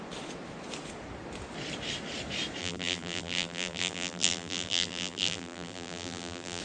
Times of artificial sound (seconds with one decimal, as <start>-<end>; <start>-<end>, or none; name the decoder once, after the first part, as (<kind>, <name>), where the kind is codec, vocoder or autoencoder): 2.6-6.6 (vocoder, BigVGAN v2)